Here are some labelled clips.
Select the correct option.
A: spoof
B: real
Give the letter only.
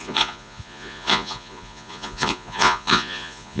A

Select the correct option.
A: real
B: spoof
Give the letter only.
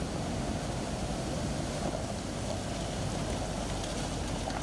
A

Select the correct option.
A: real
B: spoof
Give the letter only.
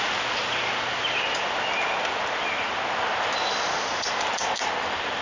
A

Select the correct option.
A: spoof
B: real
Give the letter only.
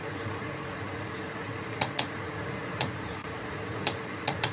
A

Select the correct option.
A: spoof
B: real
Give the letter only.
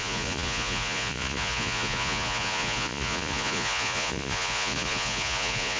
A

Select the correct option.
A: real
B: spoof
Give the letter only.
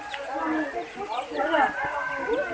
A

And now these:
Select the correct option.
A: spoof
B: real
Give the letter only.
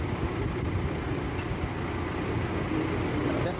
B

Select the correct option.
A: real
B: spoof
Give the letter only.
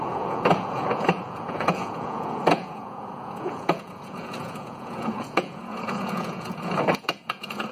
B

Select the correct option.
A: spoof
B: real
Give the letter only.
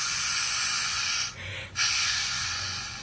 A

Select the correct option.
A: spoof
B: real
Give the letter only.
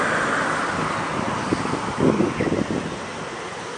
B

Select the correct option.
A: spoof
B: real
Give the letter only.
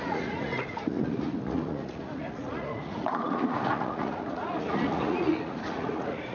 A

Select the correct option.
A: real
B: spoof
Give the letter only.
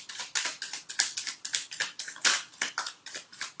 A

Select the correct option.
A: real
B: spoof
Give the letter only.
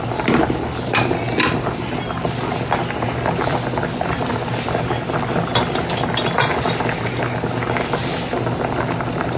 A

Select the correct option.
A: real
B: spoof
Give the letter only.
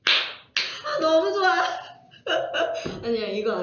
A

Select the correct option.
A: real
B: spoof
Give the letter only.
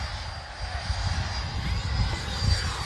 A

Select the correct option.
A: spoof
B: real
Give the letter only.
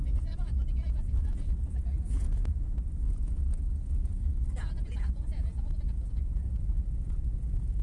A